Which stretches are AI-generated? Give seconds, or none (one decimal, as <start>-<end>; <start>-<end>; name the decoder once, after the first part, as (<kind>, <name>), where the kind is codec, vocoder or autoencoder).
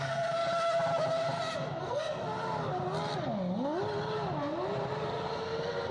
0.0-0.4 (codec, SNAC); 1.8-2.2